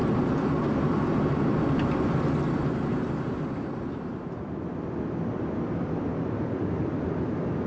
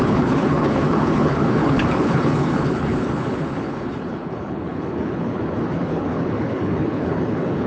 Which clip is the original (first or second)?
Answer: first